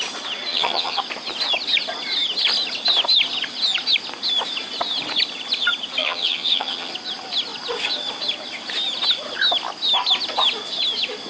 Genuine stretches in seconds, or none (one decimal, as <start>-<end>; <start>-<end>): 0.0-0.5; 1.0-6.0; 6.9-11.3